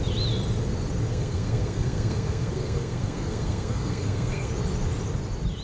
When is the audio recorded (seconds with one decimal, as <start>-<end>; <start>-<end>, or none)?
0.0-1.1; 4.5-5.6